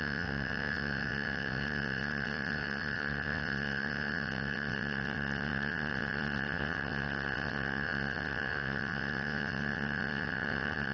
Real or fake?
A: fake